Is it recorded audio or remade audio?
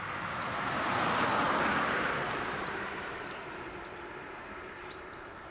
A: remade